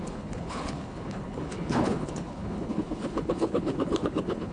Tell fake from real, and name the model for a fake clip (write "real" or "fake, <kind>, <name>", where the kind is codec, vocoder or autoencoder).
fake, codec, HILCodec